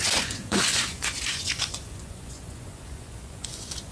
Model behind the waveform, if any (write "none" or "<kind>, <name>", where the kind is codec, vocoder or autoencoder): vocoder, Vocos